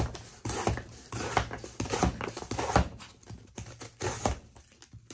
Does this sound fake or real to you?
real